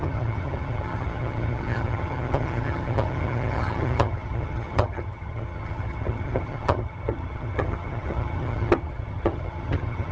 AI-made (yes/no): yes